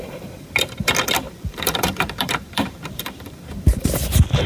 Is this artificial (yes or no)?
yes